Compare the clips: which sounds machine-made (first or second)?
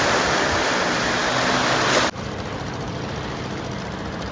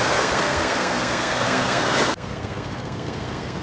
second